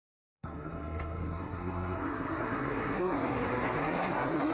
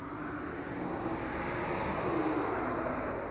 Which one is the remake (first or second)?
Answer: first